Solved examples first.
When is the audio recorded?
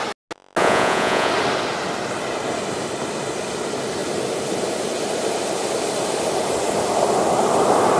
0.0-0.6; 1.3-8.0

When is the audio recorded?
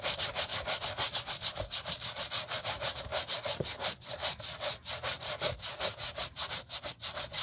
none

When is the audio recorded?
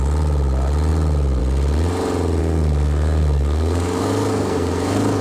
0.0-2.4